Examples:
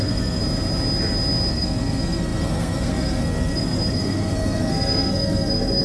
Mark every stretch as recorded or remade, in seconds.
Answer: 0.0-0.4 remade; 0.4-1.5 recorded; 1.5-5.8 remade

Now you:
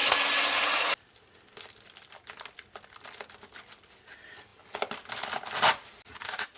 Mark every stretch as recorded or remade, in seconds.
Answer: 0.0-6.6 recorded

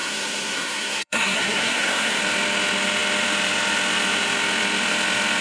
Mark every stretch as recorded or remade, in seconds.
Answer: 0.0-2.2 remade; 2.2-5.4 recorded

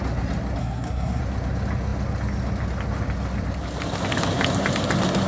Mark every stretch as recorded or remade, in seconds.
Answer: 0.0-0.6 recorded; 0.6-1.2 remade; 1.2-5.3 recorded